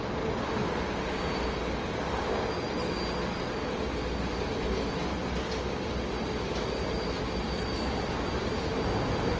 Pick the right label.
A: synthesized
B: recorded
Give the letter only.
B